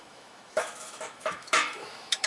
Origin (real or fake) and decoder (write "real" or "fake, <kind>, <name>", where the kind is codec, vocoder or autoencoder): fake, autoencoder, DAC-VAE